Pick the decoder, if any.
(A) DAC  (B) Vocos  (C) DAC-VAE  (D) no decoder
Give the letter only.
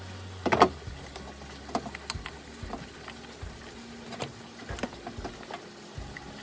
D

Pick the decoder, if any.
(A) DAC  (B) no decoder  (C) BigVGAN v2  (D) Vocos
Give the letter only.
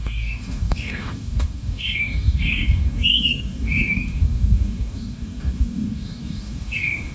A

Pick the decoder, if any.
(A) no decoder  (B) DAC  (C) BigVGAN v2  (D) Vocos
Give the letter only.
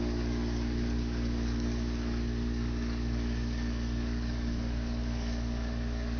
B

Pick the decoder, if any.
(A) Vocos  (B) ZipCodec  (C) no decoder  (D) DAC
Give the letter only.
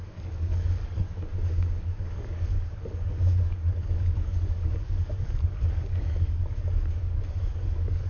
D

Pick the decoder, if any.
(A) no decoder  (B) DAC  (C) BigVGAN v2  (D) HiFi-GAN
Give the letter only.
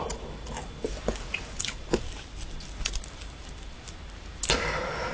A